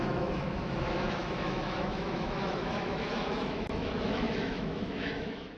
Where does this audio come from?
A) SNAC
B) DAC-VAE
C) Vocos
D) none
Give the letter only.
B